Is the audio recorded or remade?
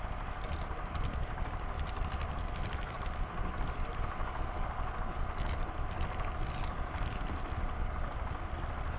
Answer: recorded